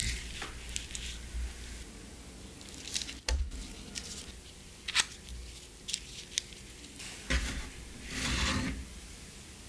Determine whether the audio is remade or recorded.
recorded